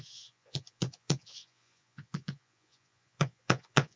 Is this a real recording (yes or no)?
no